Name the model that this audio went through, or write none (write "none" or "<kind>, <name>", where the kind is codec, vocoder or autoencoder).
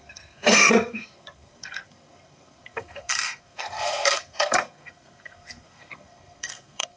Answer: codec, SNAC